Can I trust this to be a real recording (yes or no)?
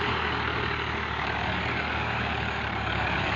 no